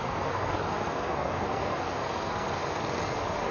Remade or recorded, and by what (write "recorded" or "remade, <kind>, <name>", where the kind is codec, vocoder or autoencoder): remade, codec, SNAC